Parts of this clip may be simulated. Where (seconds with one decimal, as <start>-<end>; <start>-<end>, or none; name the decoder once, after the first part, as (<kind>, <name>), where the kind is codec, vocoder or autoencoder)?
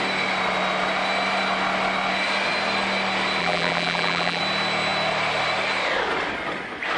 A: 3.4-4.4 (vocoder, BigVGAN v2)